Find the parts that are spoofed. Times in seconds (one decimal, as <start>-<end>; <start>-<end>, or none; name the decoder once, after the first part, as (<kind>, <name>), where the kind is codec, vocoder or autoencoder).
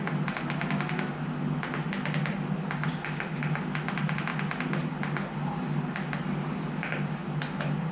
none